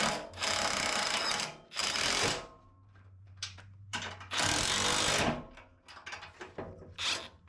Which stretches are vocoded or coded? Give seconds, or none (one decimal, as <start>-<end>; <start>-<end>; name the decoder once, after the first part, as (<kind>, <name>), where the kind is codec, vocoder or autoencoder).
1.8-4.1 (vocoder, BigVGAN v2)